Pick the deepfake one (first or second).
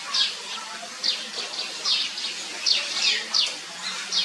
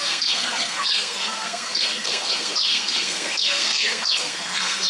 second